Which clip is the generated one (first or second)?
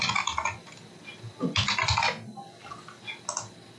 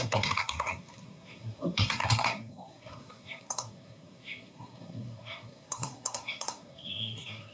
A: second